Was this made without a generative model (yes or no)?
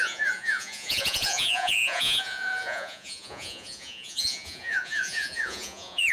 no